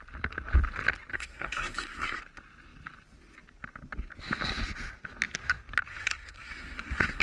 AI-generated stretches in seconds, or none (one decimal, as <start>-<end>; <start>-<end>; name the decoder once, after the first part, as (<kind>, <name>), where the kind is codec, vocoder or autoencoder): 1.1-2.2 (codec, SNAC); 5.9-7.2